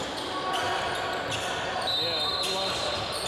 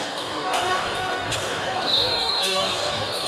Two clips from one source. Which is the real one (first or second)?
first